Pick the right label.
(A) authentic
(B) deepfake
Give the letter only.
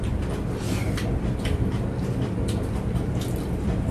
A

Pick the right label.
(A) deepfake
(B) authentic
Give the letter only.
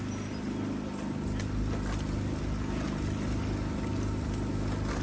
B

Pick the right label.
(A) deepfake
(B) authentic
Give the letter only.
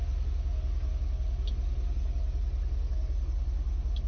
B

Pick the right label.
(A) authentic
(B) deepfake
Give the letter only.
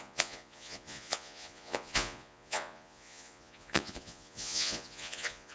B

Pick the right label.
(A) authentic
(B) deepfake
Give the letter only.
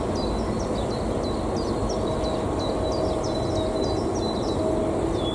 A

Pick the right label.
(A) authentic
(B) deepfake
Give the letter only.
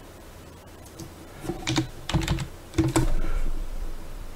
B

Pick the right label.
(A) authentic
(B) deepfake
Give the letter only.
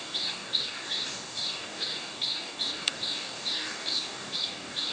B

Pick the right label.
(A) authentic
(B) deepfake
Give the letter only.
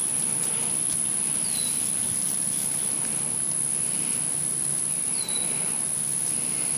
B